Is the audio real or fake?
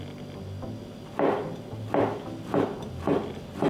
real